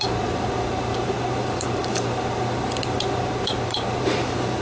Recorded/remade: remade